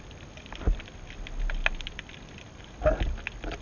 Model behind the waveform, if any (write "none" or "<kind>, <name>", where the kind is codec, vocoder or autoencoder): none